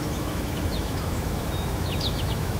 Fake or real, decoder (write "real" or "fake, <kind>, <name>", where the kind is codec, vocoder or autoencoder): fake, autoencoder, DAC-VAE